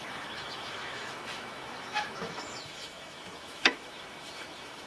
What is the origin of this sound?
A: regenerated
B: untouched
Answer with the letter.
A